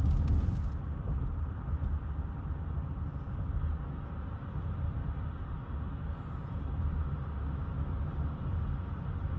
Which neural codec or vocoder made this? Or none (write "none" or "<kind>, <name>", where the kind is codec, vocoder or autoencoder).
none